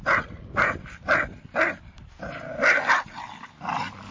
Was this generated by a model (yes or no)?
no